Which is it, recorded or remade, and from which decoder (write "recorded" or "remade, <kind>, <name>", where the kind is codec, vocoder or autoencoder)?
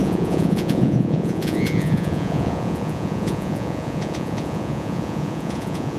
remade, vocoder, Vocos